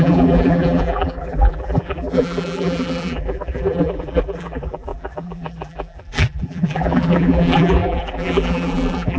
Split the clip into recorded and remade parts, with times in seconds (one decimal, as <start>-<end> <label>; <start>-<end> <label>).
0.0-9.2 remade